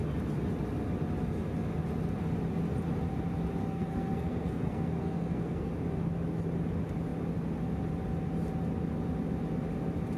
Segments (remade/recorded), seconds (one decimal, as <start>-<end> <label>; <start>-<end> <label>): 0.0-3.7 recorded; 3.7-5.7 remade; 5.7-10.2 recorded